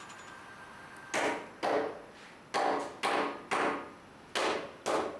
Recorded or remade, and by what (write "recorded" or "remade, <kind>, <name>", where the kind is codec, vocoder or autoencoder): recorded